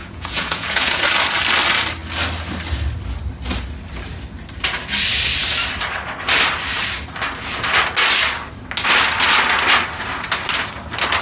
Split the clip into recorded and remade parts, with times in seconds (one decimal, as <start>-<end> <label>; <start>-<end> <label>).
0.0-1.0 remade; 1.0-11.2 recorded